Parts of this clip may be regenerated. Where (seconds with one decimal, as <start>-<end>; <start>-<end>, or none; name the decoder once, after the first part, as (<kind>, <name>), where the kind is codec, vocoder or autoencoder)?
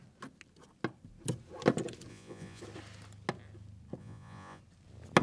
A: 2.1-2.6 (vocoder, Vocos); 4.0-4.6